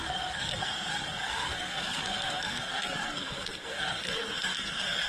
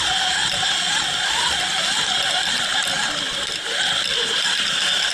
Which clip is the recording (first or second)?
second